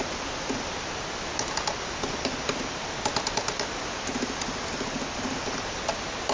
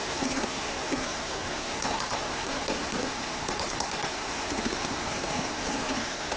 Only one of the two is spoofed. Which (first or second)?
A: second